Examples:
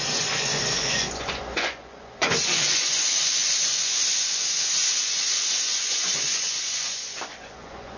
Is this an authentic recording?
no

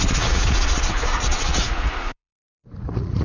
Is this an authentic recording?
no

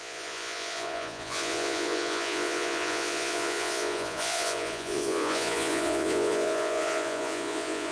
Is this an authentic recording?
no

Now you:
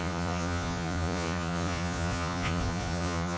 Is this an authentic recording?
no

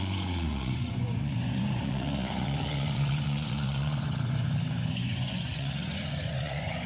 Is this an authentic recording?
no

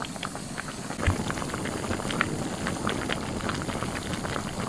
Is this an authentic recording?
yes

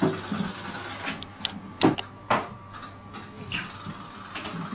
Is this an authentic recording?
yes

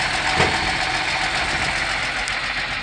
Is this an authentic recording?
yes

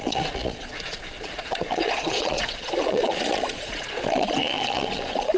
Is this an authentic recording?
no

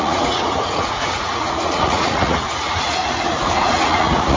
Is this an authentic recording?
no